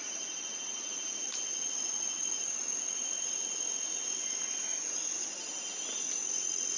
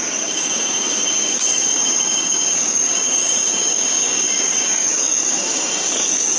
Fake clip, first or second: second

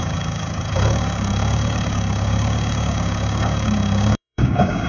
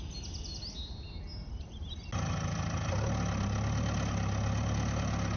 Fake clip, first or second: first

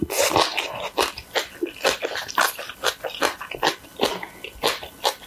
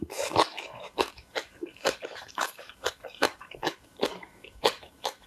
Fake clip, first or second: second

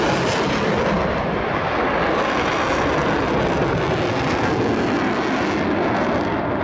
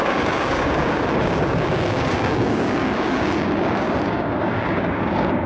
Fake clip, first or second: second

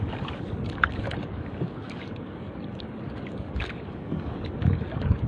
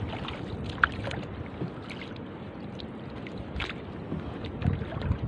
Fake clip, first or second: first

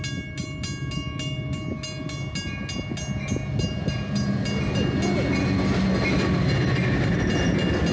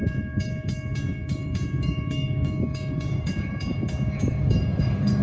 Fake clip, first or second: second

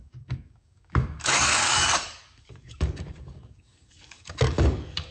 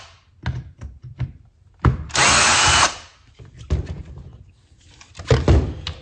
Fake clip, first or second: first